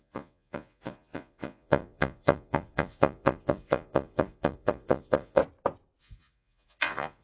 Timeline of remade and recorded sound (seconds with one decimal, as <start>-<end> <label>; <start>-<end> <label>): 0.0-5.4 remade; 5.4-6.0 recorded; 6.0-7.2 remade